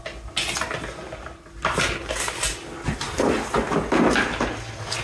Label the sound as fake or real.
real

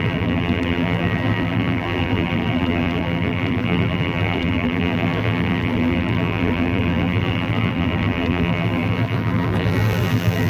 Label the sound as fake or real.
fake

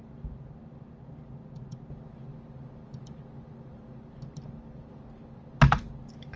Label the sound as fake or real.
real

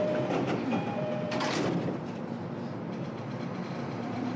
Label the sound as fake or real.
fake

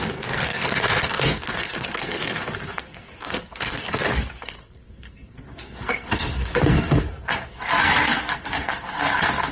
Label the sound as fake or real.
fake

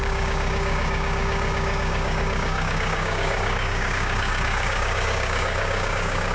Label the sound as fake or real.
fake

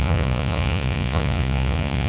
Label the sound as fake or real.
fake